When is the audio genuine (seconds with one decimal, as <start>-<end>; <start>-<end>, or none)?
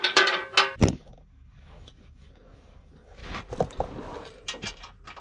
0.4-0.9; 3.2-5.2